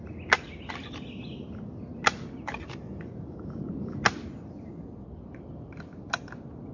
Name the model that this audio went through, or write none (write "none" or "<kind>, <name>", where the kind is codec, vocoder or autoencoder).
none